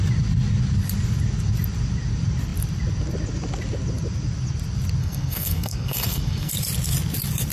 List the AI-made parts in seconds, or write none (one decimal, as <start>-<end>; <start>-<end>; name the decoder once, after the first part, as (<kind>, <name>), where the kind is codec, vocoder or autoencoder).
5.0-6.5 (codec, SNAC)